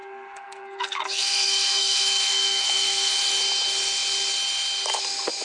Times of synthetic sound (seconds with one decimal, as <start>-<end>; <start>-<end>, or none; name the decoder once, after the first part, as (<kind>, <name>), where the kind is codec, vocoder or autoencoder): 0.0-3.2 (codec, SNAC)